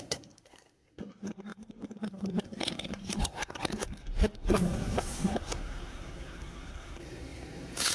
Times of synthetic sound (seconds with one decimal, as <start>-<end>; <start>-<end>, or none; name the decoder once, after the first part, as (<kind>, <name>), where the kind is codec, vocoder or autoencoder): 0.0-7.9 (codec, SNAC)